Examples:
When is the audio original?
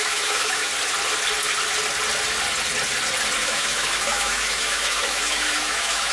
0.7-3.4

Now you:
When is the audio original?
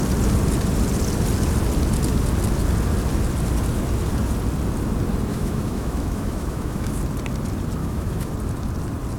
0.0-5.3; 7.0-7.8; 8.3-9.2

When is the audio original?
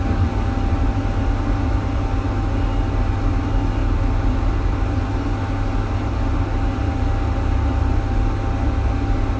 0.0-9.4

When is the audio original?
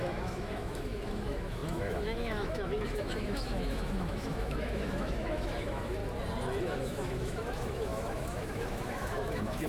6.0-6.6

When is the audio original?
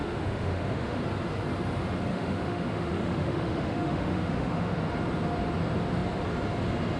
1.0-2.1; 4.8-7.0